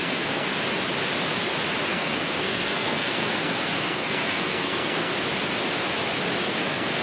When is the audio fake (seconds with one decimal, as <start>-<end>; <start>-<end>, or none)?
0.0-0.5; 1.9-5.1; 6.4-7.0